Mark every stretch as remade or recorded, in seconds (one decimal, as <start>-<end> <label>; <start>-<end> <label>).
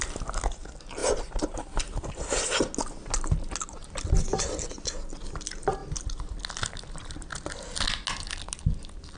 0.0-1.0 recorded; 1.0-1.8 remade; 1.8-9.2 recorded